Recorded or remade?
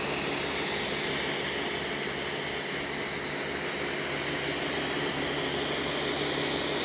recorded